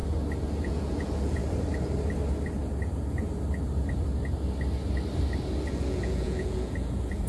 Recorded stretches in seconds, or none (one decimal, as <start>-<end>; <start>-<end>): 0.0-0.6; 1.4-5.6